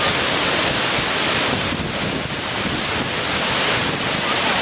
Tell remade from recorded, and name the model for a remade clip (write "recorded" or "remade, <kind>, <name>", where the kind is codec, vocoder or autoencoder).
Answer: recorded